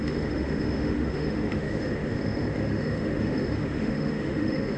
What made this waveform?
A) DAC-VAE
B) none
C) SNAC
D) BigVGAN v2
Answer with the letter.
A